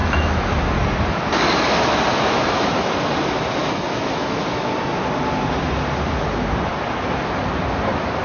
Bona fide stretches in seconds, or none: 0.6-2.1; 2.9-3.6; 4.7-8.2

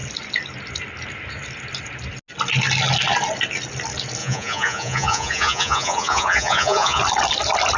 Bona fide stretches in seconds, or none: 0.0-4.2; 7.0-7.8